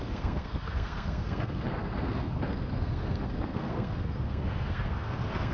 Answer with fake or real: fake